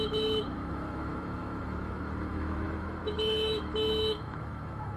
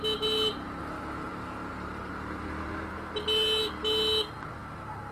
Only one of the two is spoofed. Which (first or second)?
first